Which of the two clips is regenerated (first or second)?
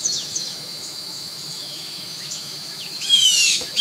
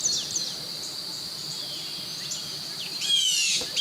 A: first